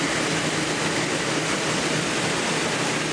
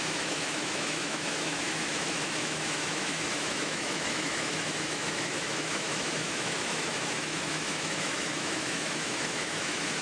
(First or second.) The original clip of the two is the first